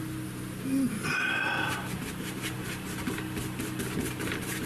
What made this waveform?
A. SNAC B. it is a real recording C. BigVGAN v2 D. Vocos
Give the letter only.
B